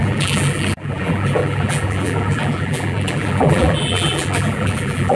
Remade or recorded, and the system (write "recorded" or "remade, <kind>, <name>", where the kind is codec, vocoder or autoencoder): remade, vocoder, BigVGAN v2